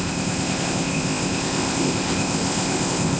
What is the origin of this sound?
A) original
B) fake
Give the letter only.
B